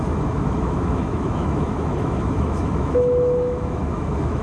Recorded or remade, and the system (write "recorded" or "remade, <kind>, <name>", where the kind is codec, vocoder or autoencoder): remade, autoencoder, DAC-VAE